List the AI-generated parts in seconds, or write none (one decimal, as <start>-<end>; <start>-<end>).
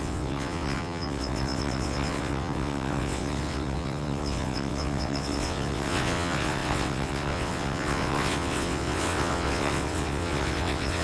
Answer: 0.0-11.0